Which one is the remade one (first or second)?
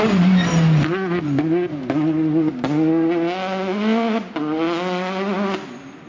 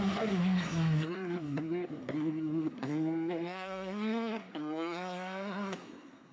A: second